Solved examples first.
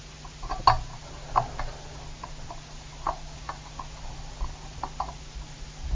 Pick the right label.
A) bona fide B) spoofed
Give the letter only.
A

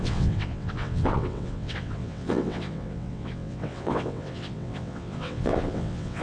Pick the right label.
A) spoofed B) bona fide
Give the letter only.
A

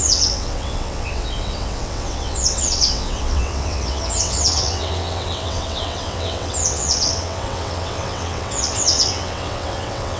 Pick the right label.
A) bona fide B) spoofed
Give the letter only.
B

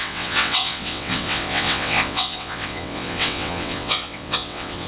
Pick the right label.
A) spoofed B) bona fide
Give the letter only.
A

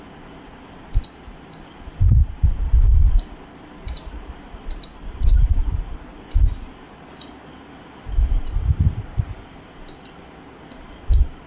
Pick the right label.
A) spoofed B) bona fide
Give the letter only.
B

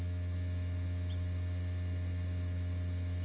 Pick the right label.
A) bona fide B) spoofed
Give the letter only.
A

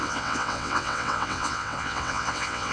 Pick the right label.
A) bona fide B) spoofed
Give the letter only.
B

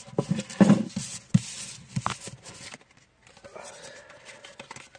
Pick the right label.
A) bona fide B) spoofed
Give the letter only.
A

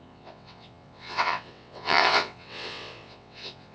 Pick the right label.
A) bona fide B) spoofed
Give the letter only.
B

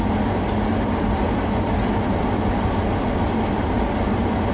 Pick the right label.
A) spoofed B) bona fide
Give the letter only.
B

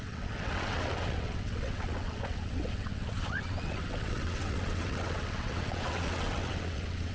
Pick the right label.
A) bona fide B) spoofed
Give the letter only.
B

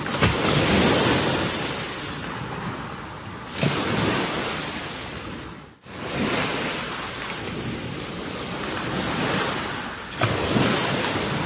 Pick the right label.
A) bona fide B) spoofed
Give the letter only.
A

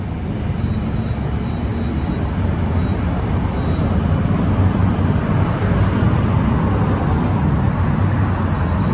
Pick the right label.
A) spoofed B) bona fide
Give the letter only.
B